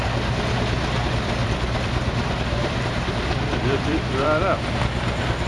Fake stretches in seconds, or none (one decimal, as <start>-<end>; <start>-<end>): 1.4-4.6